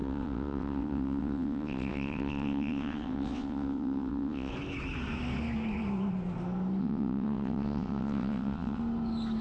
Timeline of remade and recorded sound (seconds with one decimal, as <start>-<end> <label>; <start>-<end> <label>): 0.0-4.5 remade; 4.5-6.8 recorded; 6.8-8.8 remade; 8.8-9.4 recorded